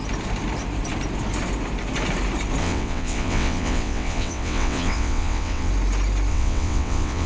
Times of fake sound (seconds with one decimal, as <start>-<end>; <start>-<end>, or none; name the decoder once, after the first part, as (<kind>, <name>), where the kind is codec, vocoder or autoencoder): 2.6-5.7 (vocoder, WaveNeXt); 6.3-7.3